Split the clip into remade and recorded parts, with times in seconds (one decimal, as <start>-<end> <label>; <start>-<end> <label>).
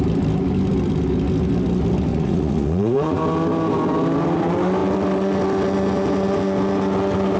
0.0-2.1 recorded; 2.1-3.2 remade; 3.2-7.4 recorded